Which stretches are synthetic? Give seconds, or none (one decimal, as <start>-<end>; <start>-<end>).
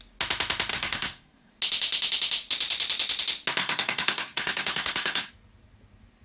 0.7-1.5; 3.6-5.3